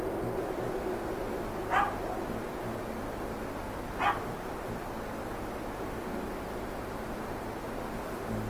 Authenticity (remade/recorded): recorded